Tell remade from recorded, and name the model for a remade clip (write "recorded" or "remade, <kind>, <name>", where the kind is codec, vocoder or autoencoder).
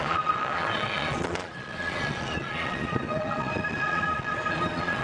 remade, vocoder, Vocos